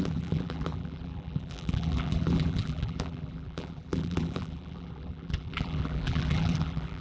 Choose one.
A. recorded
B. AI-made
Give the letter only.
B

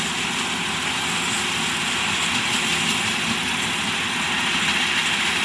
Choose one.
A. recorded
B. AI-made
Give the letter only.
A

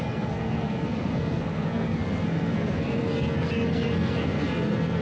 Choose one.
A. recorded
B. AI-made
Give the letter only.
B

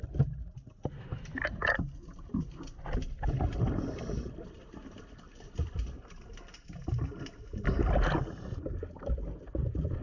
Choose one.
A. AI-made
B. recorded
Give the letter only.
B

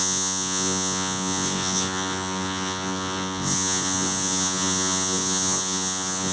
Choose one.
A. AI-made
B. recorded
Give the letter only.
A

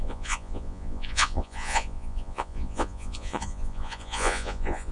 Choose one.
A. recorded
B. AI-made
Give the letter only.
B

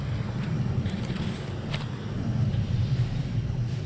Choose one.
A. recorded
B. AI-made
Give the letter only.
A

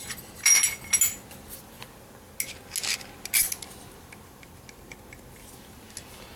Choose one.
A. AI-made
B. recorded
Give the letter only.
B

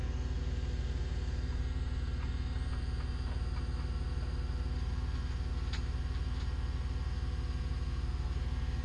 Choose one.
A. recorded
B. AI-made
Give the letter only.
A